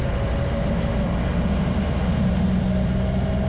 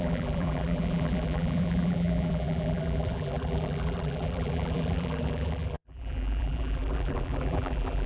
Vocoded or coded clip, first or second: second